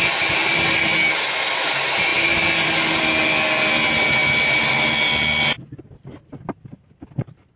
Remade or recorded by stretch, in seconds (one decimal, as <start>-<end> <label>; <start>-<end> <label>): 0.0-7.6 recorded